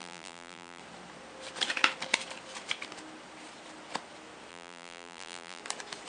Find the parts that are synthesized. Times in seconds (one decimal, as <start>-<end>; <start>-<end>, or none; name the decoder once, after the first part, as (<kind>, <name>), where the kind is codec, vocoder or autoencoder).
0.0-0.8 (vocoder, BigVGAN v2); 4.5-5.6